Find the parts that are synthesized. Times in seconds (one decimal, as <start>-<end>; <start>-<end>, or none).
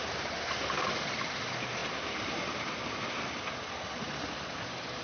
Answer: none